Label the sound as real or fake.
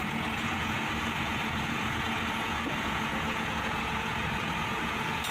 fake